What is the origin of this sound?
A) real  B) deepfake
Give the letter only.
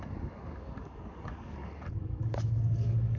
B